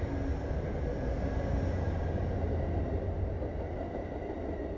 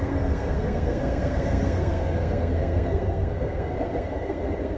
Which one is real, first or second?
first